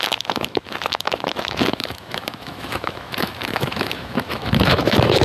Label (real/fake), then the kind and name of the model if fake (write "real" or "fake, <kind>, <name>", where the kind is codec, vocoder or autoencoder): fake, autoencoder, DAC-VAE